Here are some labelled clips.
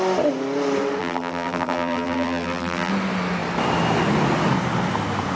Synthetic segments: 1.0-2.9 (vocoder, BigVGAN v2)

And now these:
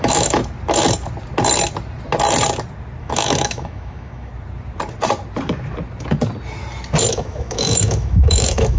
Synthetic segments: 0.0-0.4 (autoencoder, DAC-VAE); 3.0-4.3; 7.1-8.8

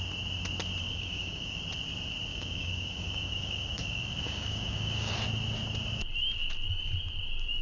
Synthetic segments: 0.8-1.6 (codec, DAC); 2.3-5.1

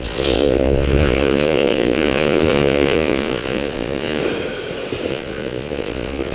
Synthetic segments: 0.0-4.2 (vocoder, Vocos); 5.1-6.3

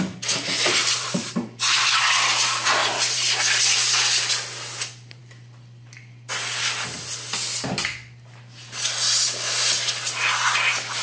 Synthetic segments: 0.8-1.8 (vocoder, BigVGAN v2); 2.8-4.3

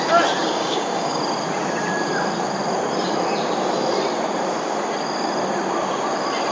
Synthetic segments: 0.4-1.2 (codec, DAC)